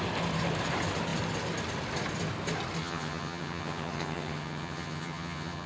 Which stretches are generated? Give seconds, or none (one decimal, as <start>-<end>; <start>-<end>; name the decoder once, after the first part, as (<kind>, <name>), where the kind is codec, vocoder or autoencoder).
2.8-5.7 (vocoder, HiFi-GAN)